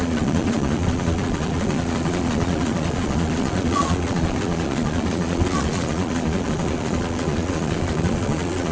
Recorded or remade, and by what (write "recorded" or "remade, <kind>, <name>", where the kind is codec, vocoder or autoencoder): remade, vocoder, Vocos